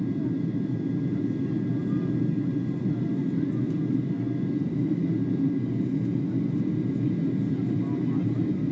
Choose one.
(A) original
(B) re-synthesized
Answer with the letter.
A